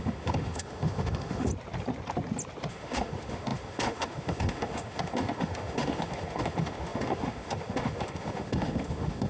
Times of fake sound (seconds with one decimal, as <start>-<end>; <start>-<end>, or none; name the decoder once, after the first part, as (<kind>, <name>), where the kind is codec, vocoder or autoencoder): 0.0-1.5 (autoencoder, DAC-VAE); 2.7-9.3